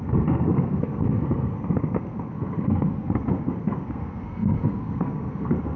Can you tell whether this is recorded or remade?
remade